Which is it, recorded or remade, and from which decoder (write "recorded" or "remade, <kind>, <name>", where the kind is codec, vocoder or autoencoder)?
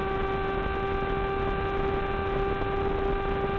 recorded